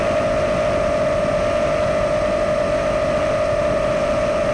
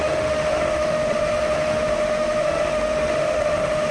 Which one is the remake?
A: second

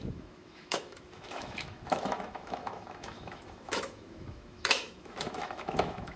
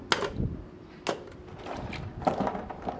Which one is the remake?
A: first